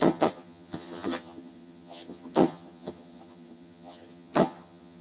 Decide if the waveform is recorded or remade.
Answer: remade